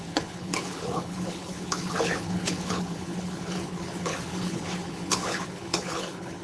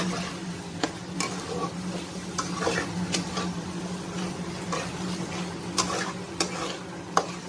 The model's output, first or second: first